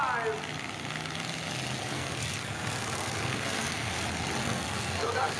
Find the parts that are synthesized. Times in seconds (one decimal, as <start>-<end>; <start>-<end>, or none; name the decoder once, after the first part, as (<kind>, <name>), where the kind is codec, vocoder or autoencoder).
1.9-3.9 (codec, SNAC); 4.4-5.4